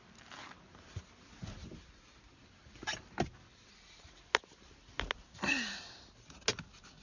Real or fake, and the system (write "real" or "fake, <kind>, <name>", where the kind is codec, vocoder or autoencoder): real